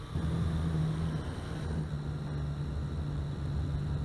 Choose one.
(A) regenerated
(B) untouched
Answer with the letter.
B